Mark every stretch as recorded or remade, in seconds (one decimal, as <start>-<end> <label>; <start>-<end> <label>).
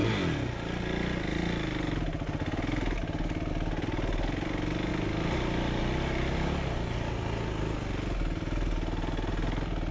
0.0-9.9 recorded